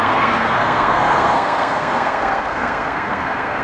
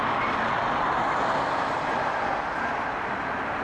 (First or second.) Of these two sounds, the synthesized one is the first